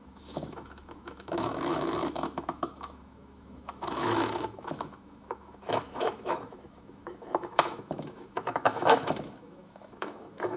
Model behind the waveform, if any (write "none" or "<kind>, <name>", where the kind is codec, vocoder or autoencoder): autoencoder, DAC-VAE